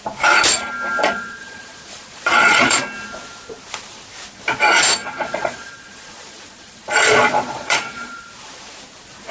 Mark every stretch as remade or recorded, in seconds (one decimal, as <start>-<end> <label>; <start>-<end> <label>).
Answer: 0.0-1.0 recorded; 1.0-2.8 remade; 2.8-5.0 recorded; 5.0-8.3 remade; 8.3-9.3 recorded